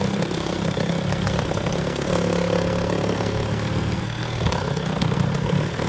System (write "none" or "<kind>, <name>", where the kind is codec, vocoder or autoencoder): codec, SNAC